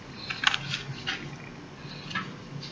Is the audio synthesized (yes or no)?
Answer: no